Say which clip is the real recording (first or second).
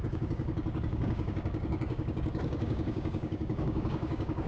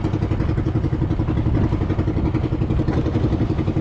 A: second